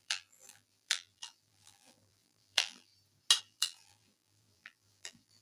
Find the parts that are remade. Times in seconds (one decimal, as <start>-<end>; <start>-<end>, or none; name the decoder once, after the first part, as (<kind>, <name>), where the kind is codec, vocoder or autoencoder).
0.0-2.9 (vocoder, BigVGAN v2); 3.4-5.4